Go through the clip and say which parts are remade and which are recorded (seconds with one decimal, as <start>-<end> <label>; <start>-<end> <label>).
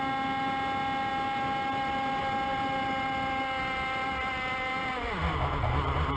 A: 0.0-6.2 recorded